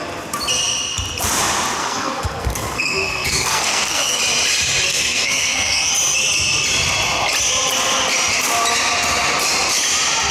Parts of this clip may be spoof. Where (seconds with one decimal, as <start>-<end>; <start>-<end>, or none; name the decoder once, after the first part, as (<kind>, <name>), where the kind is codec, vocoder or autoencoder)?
1.8-4.2 (codec, SNAC); 4.9-5.9